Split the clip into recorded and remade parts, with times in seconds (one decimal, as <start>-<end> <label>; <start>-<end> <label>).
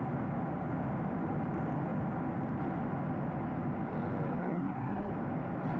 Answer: 0.0-4.4 recorded; 4.4-5.1 remade; 5.1-5.8 recorded